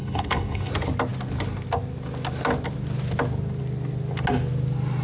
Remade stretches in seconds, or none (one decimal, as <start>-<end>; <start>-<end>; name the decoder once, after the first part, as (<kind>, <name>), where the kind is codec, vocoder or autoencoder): 0.0-0.7 (codec, HILCodec)